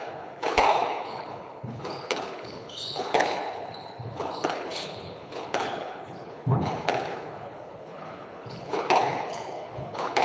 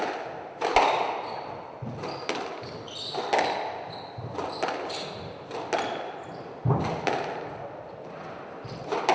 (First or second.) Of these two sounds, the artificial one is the first